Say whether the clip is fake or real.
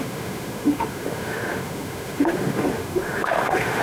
fake